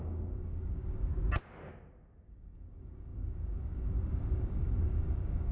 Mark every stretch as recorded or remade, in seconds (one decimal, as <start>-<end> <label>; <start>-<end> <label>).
0.0-1.1 remade; 1.1-2.3 recorded; 2.3-5.5 remade

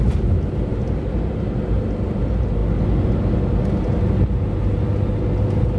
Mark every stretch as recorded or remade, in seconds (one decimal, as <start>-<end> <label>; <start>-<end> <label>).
0.0-5.8 recorded

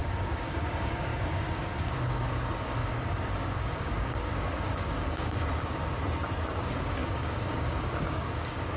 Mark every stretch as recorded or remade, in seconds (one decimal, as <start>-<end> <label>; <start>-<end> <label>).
0.0-5.5 remade; 5.5-6.6 recorded; 6.6-8.8 remade

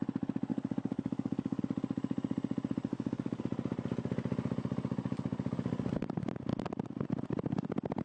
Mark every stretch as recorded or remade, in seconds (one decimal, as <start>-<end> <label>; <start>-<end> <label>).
0.0-0.5 recorded; 0.5-1.6 remade; 1.6-2.9 recorded; 2.9-3.4 remade; 3.4-8.0 recorded